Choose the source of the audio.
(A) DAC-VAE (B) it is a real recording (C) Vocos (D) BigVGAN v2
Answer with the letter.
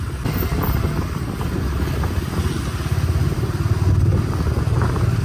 B